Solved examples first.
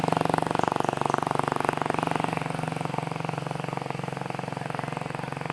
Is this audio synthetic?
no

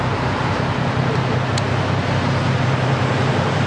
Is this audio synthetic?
no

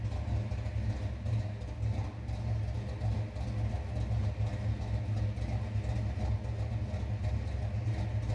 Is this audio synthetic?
no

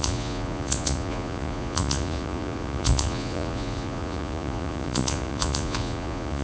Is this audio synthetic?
yes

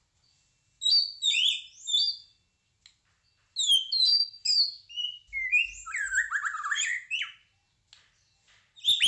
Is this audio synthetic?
no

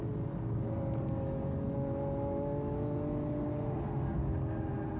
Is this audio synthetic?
no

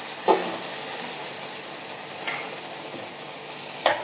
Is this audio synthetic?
no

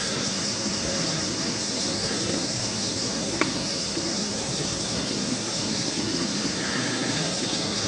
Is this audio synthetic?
yes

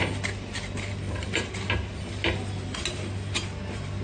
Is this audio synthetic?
no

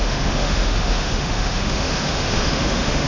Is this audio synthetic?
yes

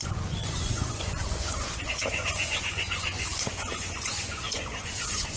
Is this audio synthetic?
yes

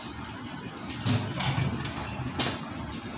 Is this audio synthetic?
no